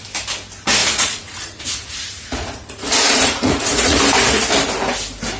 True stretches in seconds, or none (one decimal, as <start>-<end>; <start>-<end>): 0.0-0.8; 4.0-5.4